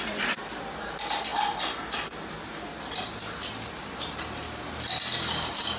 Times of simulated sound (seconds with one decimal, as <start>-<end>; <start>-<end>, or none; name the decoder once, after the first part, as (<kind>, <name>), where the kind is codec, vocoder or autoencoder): none